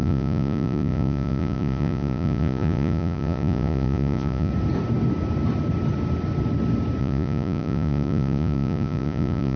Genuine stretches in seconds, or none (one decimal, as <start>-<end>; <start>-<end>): 4.5-7.0